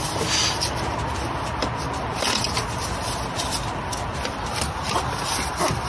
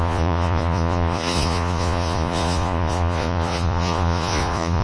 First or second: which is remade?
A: second